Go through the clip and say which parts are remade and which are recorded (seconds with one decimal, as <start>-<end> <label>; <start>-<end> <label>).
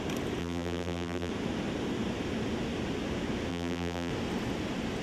0.0-0.4 recorded; 0.4-1.3 remade; 1.3-3.5 recorded; 3.5-4.1 remade; 4.1-5.0 recorded